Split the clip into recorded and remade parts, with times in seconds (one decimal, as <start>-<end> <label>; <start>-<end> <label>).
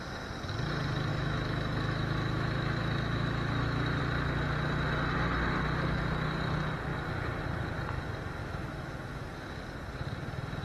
0.0-1.1 recorded; 1.1-4.0 remade; 4.0-8.4 recorded; 8.4-9.6 remade; 9.6-10.6 recorded